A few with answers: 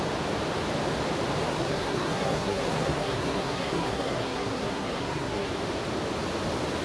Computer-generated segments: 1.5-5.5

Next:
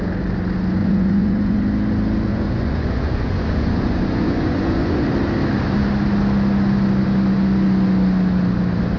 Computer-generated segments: 0.8-1.6; 2.3-5.1

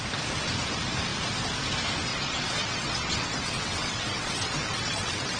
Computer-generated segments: 2.1-5.4

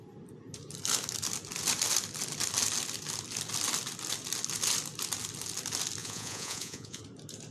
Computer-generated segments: 6.0-7.0

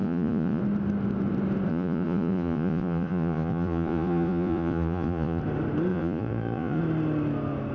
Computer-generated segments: 0.0-0.6; 1.7-5.4; 5.9-6.8